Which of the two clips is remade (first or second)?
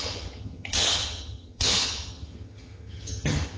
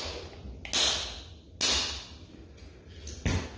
first